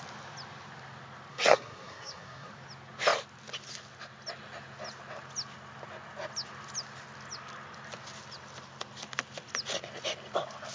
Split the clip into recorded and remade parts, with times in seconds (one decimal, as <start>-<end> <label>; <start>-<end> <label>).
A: 0.0-1.3 recorded; 1.3-2.5 remade; 2.5-10.7 recorded